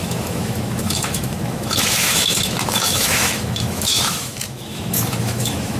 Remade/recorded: remade